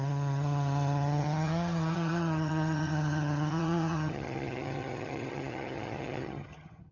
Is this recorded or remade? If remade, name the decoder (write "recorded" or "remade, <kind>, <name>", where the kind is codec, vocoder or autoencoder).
remade, vocoder, HiFi-GAN